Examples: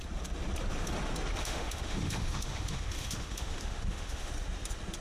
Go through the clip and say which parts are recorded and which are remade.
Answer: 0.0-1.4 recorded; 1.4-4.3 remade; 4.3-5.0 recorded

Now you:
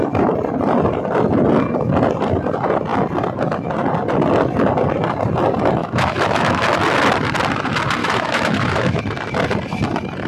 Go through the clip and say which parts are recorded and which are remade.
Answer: 0.0-5.8 recorded; 5.8-6.6 remade; 6.6-8.0 recorded; 8.0-9.0 remade; 9.0-10.3 recorded

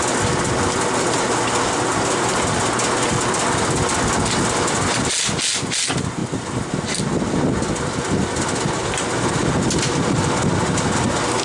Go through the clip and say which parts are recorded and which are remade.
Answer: 0.0-11.4 recorded

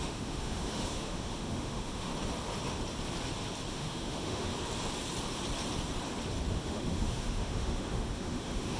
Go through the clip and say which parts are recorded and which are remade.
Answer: 0.0-2.1 remade; 2.1-3.7 recorded; 3.7-4.5 remade; 4.5-6.5 recorded; 6.5-8.8 remade

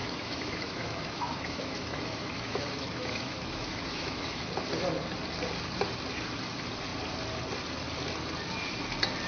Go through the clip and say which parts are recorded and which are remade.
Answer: 0.0-4.4 remade; 4.4-9.3 recorded